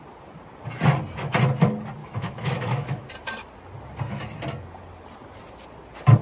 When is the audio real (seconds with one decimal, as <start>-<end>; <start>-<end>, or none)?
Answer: 0.0-2.0; 3.1-6.2